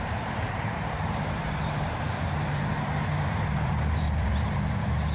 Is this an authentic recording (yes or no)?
no